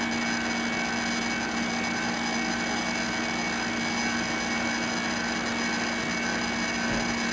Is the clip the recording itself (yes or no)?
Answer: yes